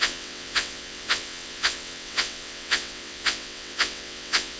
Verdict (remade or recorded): remade